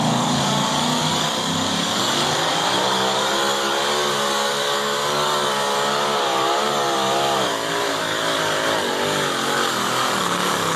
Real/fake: fake